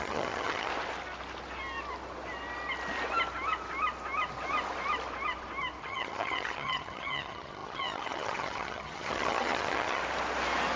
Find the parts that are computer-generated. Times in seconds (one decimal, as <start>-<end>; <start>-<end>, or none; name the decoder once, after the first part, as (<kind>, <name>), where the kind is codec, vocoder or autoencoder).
0.0-0.7 (vocoder, HiFi-GAN); 5.8-10.0